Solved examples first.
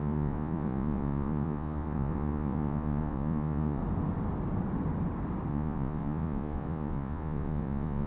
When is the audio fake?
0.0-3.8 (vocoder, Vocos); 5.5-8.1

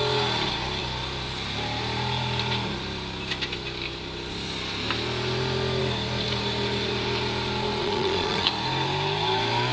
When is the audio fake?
7.8-8.5 (vocoder, Vocos)

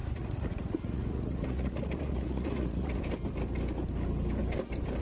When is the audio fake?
0.0-3.0 (vocoder, Vocos)